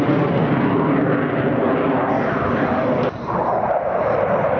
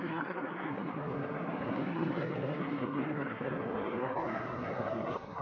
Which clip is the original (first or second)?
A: first